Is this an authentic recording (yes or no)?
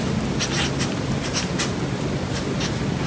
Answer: yes